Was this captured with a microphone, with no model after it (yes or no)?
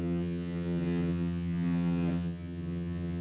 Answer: no